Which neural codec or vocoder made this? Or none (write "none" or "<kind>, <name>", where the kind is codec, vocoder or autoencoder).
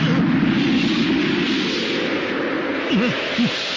none